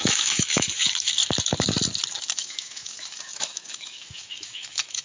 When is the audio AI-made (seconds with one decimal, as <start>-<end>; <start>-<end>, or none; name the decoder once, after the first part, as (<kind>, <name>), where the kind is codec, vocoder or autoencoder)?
0.0-1.2 (autoencoder, DAC-VAE); 2.2-5.0